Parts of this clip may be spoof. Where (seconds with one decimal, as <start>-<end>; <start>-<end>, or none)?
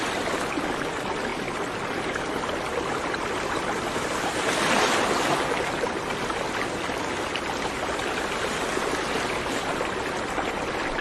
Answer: none